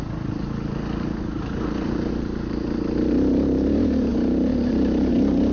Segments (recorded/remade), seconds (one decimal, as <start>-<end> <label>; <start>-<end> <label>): 0.0-4.1 recorded; 4.1-5.1 remade; 5.1-5.5 recorded